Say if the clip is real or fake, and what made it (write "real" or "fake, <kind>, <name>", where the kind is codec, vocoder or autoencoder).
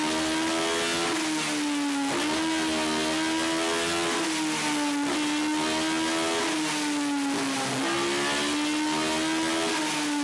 real